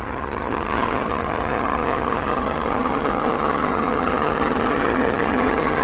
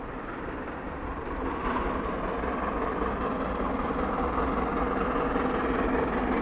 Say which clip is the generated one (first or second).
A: first